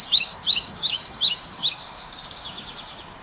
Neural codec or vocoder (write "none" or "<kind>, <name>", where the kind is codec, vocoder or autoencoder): codec, DAC